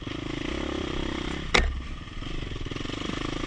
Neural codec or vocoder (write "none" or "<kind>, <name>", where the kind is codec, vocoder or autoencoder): vocoder, BigVGAN v2